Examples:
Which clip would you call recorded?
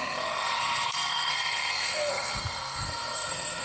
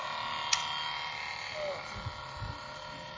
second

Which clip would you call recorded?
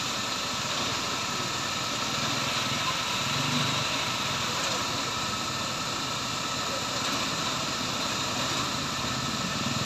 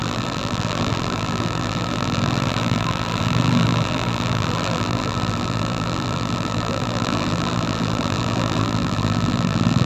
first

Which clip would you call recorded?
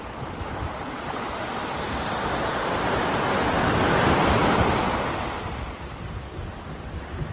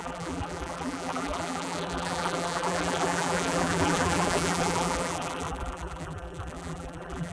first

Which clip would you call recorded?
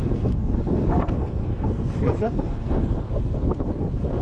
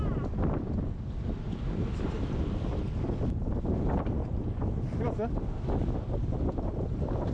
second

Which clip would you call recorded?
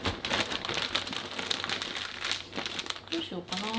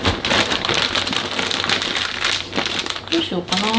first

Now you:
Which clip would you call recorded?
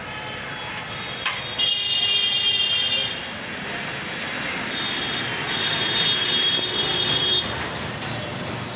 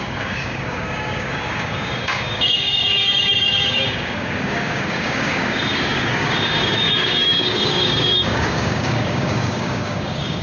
first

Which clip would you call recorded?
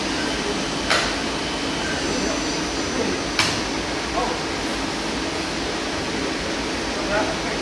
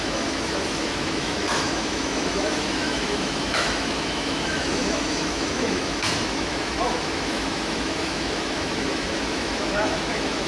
first